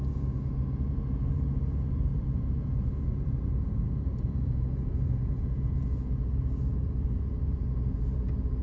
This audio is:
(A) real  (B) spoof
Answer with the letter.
B